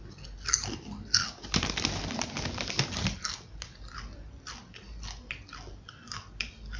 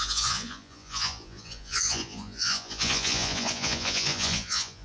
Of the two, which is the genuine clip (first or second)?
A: first